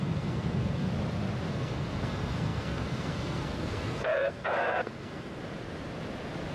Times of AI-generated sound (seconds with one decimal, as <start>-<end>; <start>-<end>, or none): 0.0-0.9; 1.5-5.4